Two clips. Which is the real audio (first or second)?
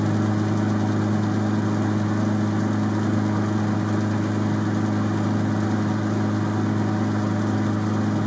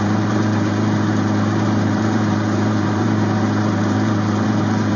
first